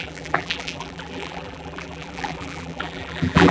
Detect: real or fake fake